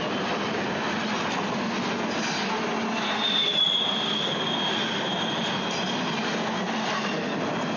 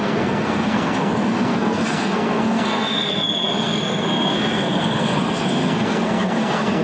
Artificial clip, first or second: second